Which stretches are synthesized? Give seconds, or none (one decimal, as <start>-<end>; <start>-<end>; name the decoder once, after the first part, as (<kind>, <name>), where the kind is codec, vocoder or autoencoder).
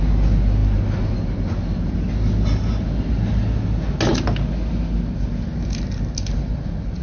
none